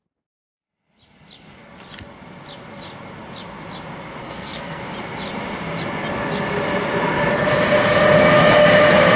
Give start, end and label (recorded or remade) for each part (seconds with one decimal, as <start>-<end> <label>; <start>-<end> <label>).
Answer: 0.0-4.2 recorded; 4.2-4.8 remade; 4.8-9.2 recorded